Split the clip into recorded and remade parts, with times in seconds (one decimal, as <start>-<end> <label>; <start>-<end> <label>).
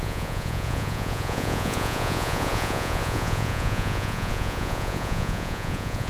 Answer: 0.0-6.1 remade